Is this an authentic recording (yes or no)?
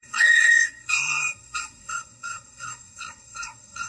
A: no